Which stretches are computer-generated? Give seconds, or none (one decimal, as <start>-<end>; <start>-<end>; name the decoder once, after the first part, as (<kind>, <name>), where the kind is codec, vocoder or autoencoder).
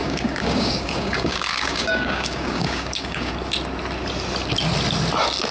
0.0-3.3 (codec, DAC)